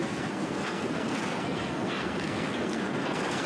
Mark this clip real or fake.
fake